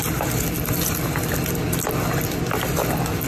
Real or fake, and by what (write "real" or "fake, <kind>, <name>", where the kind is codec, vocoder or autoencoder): real